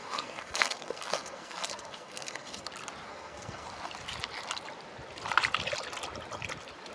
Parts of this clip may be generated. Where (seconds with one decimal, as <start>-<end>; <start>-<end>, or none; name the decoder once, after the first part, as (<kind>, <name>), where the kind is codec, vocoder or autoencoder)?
0.0-2.7 (codec, SNAC); 3.1-3.8